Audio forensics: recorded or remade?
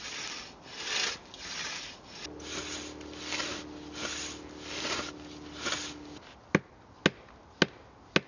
recorded